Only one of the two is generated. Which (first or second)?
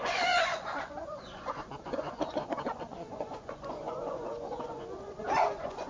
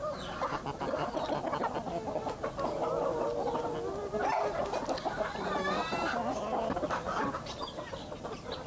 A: first